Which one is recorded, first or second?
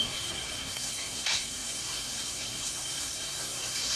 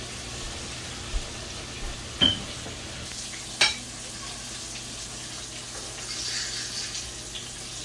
second